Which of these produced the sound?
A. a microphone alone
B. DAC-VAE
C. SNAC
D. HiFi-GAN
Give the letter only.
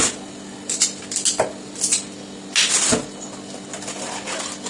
A